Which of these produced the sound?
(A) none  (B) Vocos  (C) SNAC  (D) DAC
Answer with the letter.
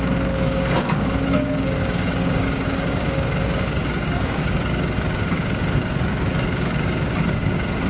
D